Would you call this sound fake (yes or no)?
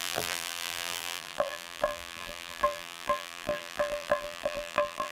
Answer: yes